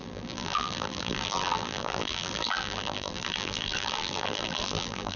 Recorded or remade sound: remade